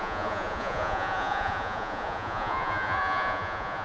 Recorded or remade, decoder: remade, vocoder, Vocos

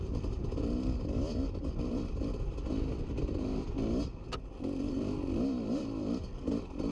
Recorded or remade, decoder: recorded